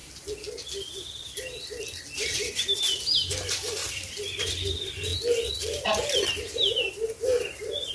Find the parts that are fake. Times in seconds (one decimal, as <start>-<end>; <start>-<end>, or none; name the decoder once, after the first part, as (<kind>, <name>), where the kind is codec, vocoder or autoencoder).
3.8-4.4 (vocoder, BigVGAN v2)